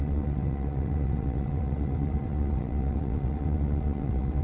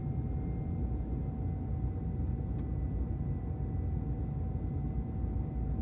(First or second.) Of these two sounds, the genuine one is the second